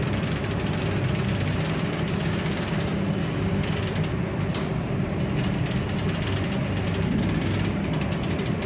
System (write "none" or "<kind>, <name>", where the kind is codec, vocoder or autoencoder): none